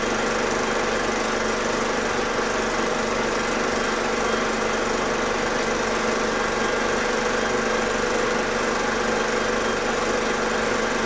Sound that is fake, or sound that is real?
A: real